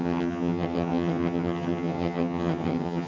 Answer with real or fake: fake